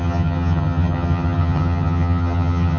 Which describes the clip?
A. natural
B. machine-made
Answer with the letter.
B